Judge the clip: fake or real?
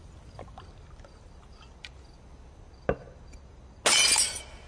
real